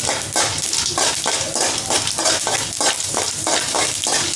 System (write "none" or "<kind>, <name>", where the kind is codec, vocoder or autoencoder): none